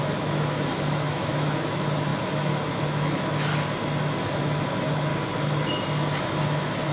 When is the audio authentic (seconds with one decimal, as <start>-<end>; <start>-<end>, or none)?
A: 3.5-4.4; 5.1-6.2